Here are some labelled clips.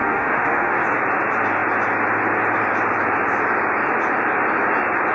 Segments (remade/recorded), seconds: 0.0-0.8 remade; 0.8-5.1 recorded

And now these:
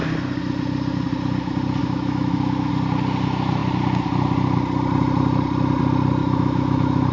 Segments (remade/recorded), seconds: 0.0-1.8 recorded; 1.8-2.7 remade; 2.7-6.2 recorded; 6.2-7.1 remade

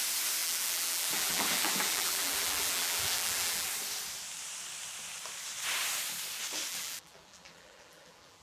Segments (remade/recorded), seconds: 0.0-0.4 recorded; 0.4-3.7 remade; 3.7-6.7 recorded; 6.7-8.4 remade

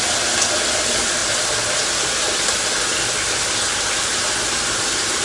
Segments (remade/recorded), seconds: 0.0-5.2 recorded

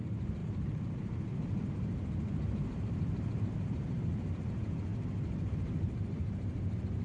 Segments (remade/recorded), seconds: 0.0-4.9 remade; 4.9-5.5 recorded; 5.5-7.0 remade